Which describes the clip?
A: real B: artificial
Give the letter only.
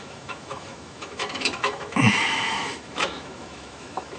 B